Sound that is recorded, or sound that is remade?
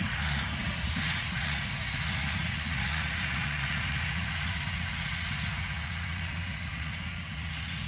remade